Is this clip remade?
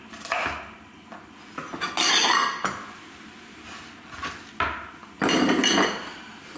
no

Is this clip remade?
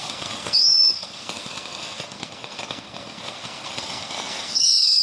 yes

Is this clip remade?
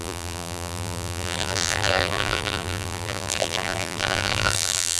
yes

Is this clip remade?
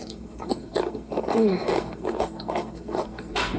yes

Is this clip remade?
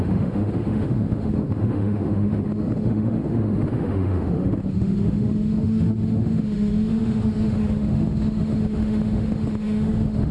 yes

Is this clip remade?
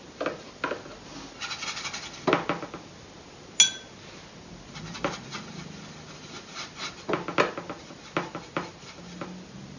no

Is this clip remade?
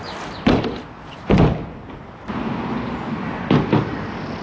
no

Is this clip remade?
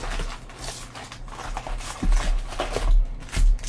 no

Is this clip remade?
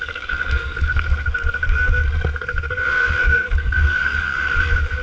yes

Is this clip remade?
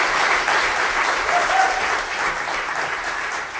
no